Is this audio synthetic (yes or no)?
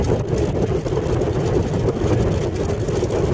no